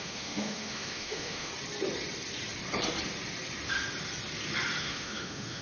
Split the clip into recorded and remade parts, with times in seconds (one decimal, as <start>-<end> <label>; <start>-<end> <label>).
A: 0.0-1.5 remade; 1.5-4.8 recorded; 4.8-5.6 remade